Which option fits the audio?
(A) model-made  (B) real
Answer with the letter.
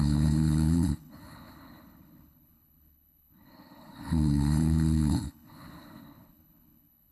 A